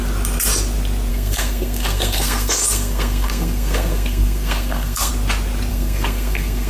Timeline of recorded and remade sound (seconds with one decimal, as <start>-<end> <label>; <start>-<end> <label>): 0.0-1.1 recorded; 1.1-5.1 remade; 5.1-5.7 recorded; 5.7-6.7 remade